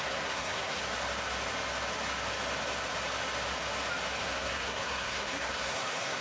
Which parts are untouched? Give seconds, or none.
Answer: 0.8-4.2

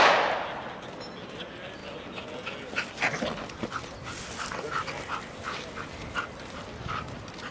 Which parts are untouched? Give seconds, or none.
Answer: 0.0-7.5

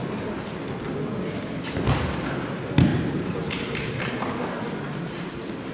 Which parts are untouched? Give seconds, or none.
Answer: 0.0-2.9; 4.1-5.7